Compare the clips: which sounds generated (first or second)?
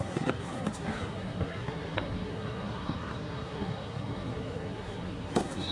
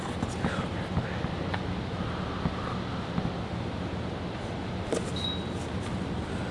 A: first